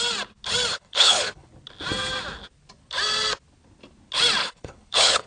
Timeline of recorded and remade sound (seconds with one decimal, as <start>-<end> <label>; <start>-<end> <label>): 0.0-0.7 recorded; 0.7-1.5 remade; 1.5-4.4 recorded; 4.4-5.3 remade